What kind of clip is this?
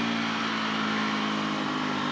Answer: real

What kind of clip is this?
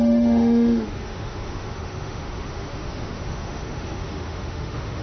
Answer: fake